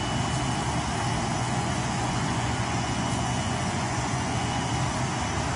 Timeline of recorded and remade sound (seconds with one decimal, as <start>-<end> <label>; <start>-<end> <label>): 0.0-1.3 recorded; 1.3-4.7 remade; 4.7-5.6 recorded